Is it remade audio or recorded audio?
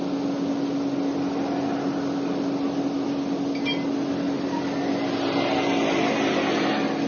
recorded